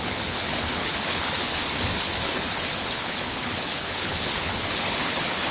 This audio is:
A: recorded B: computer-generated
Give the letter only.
B